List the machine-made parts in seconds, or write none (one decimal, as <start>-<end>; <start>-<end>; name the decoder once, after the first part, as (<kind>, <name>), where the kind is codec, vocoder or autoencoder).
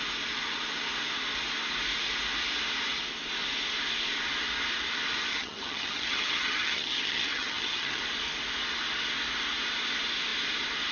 5.3-8.0 (vocoder, HiFi-GAN)